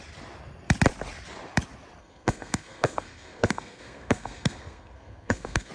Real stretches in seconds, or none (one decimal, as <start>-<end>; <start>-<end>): 0.0-2.0